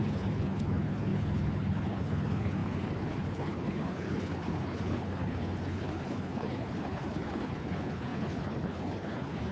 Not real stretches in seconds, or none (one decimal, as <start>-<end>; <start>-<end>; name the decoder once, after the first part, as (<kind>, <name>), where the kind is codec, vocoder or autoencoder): 0.0-9.5 (codec, HILCodec)